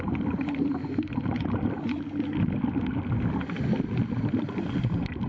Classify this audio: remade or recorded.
recorded